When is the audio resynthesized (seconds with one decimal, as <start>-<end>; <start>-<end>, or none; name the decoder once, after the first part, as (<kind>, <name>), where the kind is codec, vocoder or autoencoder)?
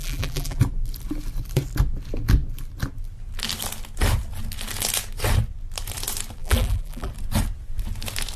0.0-0.6 (vocoder, BigVGAN v2); 6.4-7.1